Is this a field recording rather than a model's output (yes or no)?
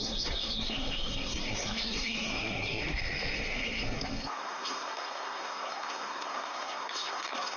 no